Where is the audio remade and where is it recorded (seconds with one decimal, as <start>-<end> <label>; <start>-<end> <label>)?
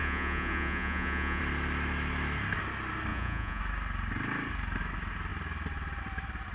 0.0-1.4 remade; 1.4-3.1 recorded; 3.1-3.6 remade; 3.6-6.5 recorded